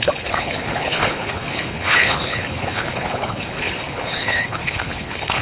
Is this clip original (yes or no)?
no